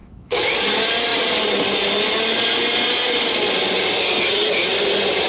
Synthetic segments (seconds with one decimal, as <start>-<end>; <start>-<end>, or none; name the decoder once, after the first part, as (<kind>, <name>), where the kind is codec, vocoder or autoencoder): 0.0-0.5 (autoencoder, DAC-VAE)